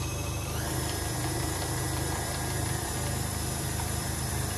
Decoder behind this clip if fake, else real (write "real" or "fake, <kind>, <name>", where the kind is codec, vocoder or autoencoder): fake, vocoder, BigVGAN v2